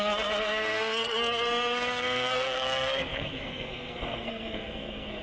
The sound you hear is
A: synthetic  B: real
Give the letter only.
A